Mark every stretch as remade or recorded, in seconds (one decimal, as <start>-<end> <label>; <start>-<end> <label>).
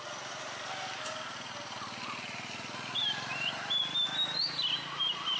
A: 0.0-3.0 recorded; 3.0-3.8 remade; 3.8-5.4 recorded